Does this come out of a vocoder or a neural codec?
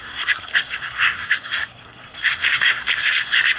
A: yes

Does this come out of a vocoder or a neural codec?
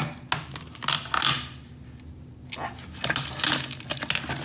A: no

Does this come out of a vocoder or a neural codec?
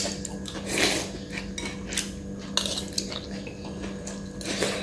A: no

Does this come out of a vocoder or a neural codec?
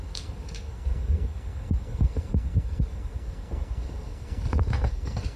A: yes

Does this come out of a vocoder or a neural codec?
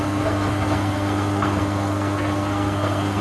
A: yes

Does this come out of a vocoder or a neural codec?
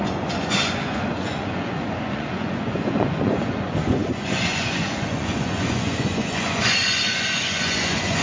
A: yes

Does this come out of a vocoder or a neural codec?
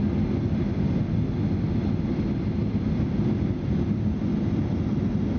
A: no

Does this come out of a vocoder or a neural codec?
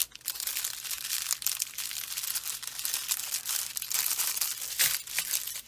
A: no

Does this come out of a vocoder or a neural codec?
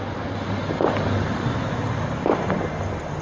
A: no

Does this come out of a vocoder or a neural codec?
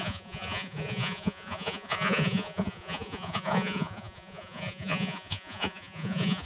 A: yes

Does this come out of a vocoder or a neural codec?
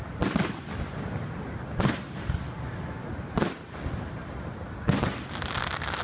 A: no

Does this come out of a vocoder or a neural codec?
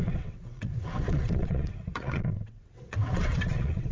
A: yes